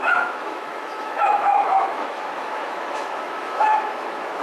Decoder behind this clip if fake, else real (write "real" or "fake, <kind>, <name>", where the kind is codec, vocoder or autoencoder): fake, autoencoder, DAC-VAE